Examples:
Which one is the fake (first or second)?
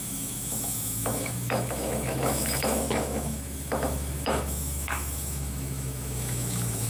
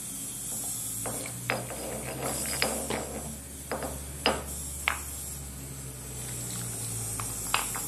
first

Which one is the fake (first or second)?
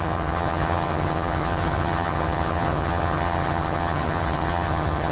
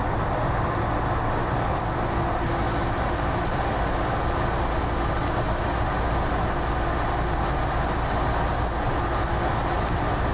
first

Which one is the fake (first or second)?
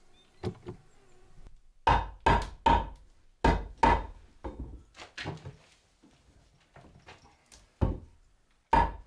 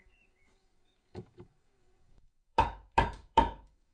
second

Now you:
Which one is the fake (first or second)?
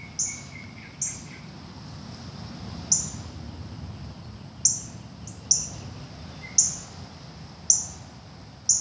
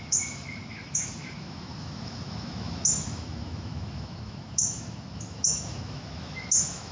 second